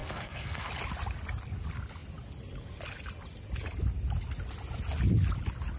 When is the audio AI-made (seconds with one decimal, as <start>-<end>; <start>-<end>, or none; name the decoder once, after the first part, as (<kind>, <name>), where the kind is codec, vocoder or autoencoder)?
0.0-0.7 (codec, SNAC)